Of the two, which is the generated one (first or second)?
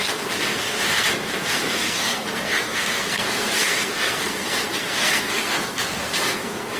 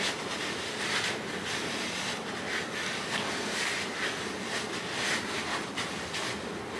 first